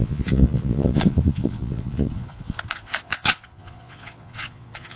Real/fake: fake